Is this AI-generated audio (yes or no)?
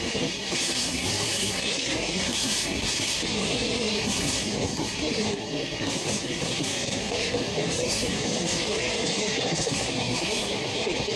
yes